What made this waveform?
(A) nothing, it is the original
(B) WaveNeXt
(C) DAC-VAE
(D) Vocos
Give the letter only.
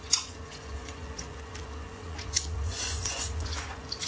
D